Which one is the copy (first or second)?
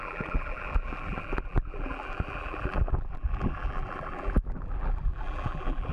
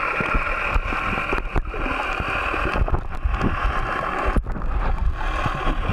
first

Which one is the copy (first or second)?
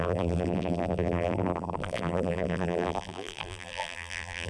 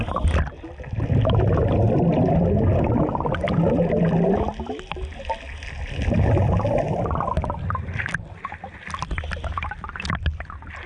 first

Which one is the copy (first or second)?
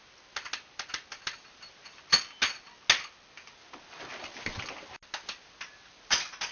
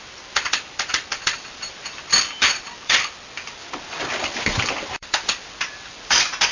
second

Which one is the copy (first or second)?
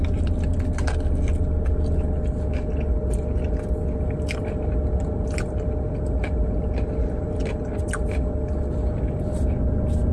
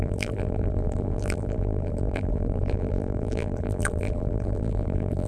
second